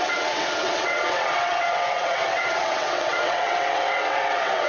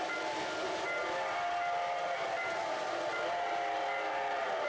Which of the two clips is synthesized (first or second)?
first